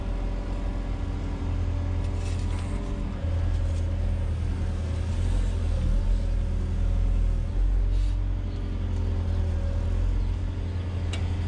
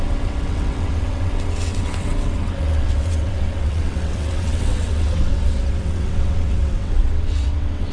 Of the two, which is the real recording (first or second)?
first